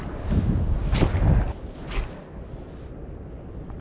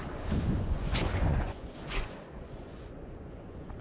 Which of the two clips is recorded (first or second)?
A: first